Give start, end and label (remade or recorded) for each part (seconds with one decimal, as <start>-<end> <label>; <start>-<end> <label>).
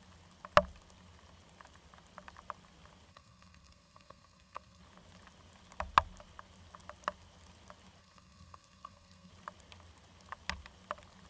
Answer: 0.0-3.1 recorded; 3.1-4.8 remade; 4.8-8.0 recorded; 8.0-9.3 remade; 9.3-11.3 recorded